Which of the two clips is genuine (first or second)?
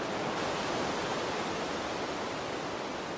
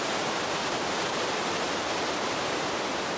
first